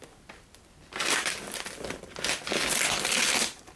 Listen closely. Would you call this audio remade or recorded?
recorded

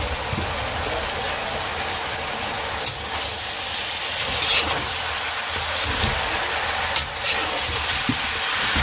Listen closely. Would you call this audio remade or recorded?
recorded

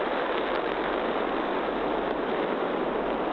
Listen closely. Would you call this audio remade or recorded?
recorded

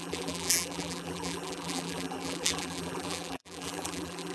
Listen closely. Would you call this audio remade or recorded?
remade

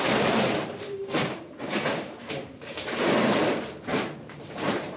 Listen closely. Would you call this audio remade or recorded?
remade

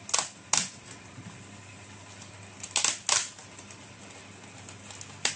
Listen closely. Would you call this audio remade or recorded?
recorded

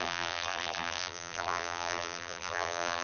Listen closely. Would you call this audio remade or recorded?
remade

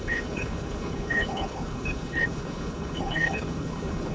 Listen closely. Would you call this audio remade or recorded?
remade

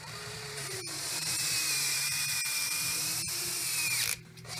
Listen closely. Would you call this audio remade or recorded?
remade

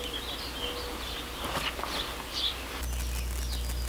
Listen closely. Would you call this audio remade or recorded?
recorded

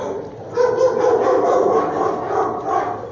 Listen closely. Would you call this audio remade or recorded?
recorded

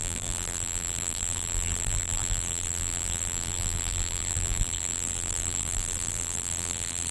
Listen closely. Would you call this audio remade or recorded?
remade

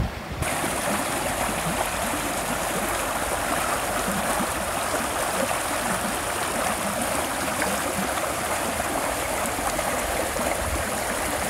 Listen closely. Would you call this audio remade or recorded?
remade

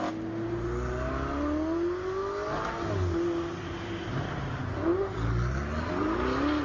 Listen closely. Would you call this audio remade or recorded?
recorded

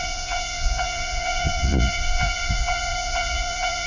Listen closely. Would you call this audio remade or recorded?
remade